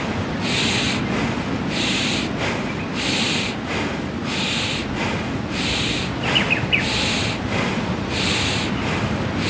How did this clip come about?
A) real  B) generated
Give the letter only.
A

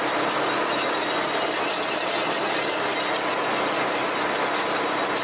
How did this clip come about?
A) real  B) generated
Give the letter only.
A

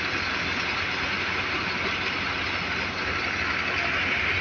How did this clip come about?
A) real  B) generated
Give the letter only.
A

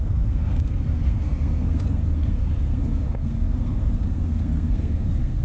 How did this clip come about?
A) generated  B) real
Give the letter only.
A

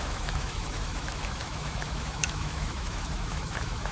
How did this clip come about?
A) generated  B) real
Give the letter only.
A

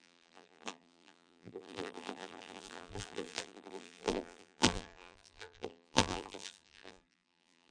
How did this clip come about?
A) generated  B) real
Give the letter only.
A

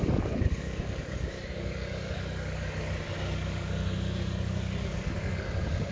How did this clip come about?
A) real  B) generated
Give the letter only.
B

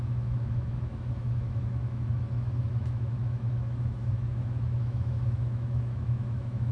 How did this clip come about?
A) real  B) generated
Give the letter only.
B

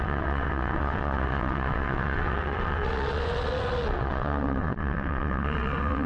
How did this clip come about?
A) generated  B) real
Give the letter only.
A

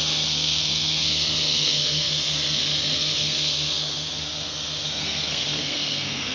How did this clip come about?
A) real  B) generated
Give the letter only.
B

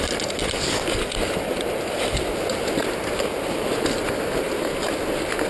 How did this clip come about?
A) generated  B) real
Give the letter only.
B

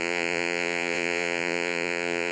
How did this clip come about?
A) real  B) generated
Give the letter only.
B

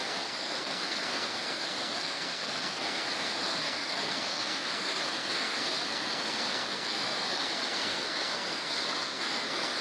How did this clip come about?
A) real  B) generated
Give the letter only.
B